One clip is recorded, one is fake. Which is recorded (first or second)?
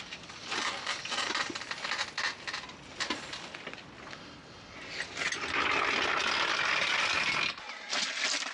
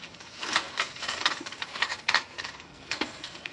first